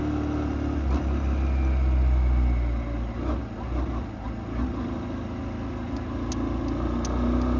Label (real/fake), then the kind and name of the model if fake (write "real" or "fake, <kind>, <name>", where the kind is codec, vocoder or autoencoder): real